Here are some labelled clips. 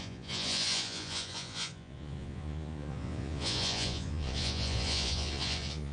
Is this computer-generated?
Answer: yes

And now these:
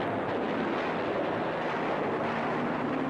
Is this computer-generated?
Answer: no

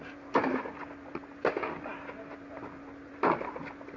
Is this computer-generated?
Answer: no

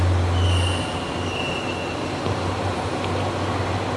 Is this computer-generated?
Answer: no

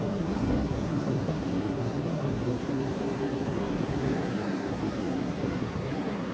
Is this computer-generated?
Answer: yes